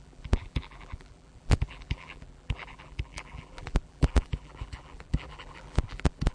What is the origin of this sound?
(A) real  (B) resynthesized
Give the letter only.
B